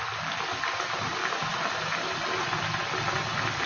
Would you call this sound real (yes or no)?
yes